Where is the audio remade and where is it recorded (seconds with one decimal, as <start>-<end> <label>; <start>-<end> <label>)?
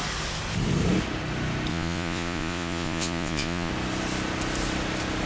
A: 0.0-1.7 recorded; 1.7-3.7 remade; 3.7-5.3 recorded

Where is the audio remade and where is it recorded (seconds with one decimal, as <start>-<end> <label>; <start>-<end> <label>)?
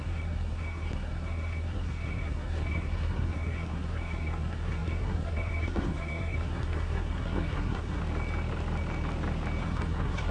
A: 0.0-8.0 remade; 8.0-9.6 recorded; 9.6-10.3 remade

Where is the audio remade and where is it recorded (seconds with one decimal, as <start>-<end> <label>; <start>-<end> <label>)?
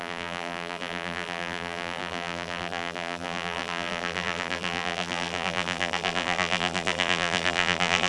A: 0.0-8.1 remade